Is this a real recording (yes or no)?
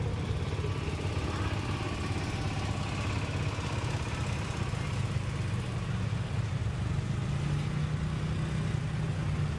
yes